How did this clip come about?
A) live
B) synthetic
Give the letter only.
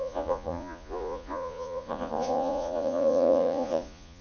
B